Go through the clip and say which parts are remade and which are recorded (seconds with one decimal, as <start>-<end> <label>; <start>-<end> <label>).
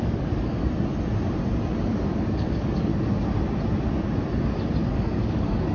0.0-0.6 remade; 0.6-1.8 recorded; 1.8-2.9 remade; 2.9-4.9 recorded; 4.9-5.7 remade